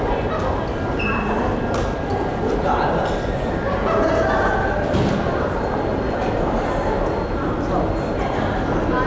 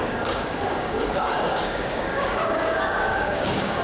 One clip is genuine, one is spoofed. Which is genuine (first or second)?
first